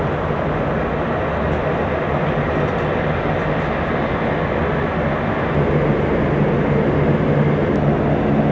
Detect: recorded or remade recorded